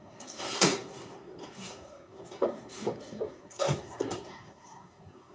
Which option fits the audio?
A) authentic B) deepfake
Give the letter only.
B